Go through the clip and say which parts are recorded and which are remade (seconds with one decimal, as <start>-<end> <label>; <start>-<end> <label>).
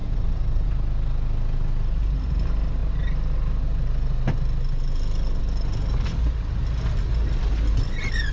0.0-0.7 remade; 0.7-8.3 recorded